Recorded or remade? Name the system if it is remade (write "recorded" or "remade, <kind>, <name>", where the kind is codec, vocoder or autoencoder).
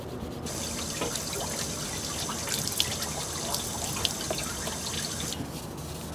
recorded